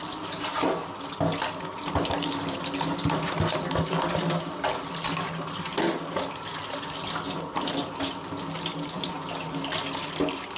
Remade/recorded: recorded